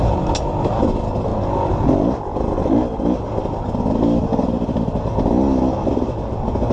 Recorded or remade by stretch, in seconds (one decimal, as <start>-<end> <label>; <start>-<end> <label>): 0.0-6.7 recorded

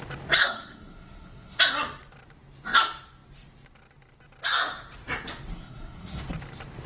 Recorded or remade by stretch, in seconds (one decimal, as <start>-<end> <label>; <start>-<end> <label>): 0.0-0.4 recorded; 0.4-1.6 remade; 1.6-5.5 recorded; 5.5-6.2 remade; 6.2-6.9 recorded

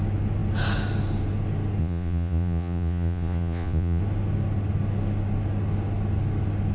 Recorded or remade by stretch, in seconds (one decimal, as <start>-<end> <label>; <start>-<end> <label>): 0.0-1.8 recorded; 1.8-4.0 remade; 4.0-6.7 recorded

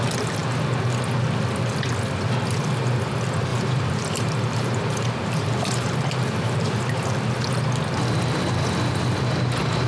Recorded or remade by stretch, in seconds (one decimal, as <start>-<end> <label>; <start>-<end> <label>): 0.0-3.5 recorded; 3.5-6.8 remade; 6.8-9.9 recorded

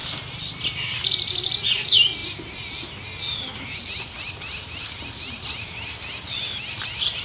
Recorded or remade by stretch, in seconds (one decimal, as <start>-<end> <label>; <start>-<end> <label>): 0.0-7.2 remade

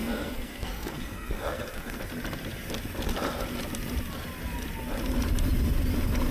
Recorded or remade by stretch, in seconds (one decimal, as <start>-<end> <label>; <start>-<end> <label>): 0.0-2.1 remade; 2.1-6.3 recorded